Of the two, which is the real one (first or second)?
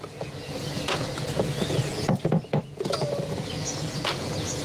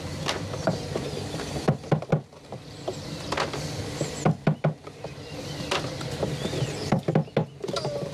second